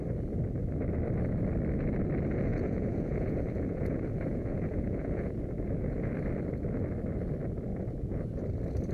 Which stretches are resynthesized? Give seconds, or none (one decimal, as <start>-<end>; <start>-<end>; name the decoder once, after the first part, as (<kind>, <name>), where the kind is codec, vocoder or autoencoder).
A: 2.5-6.1 (vocoder, Vocos); 7.7-8.4